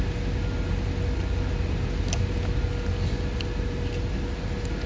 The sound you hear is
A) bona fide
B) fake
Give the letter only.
A